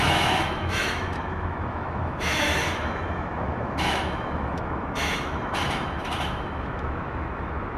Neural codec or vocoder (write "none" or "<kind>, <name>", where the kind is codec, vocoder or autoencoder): autoencoder, DAC-VAE